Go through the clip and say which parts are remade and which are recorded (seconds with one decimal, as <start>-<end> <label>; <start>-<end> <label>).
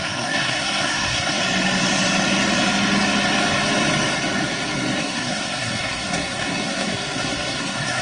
0.0-1.4 remade; 1.4-5.0 recorded; 5.0-8.0 remade